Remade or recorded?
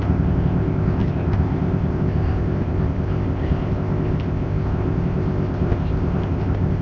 remade